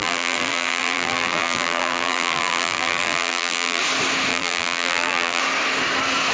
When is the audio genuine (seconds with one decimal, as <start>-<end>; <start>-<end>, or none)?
3.8-4.3; 5.4-6.3